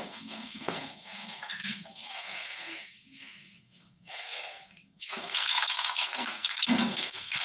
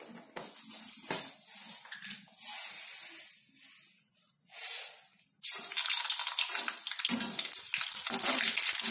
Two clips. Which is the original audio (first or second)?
second